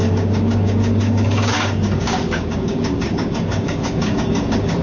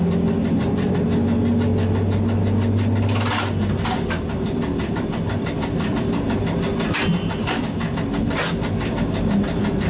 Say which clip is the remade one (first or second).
first